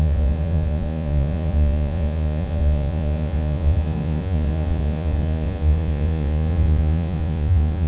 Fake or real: fake